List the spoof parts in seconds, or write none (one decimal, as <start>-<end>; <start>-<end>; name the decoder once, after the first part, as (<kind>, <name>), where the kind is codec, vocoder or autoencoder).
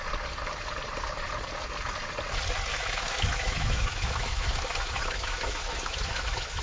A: 2.7-6.6 (autoencoder, DAC-VAE)